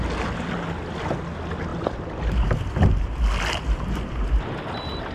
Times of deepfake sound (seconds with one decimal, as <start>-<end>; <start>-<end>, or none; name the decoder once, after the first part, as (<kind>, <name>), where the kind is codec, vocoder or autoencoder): none